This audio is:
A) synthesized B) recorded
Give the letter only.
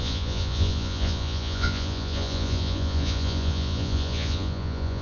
A